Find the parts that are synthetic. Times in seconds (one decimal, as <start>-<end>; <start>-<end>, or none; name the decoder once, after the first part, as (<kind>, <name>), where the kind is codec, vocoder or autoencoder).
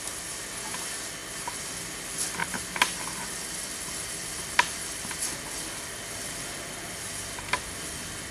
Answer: none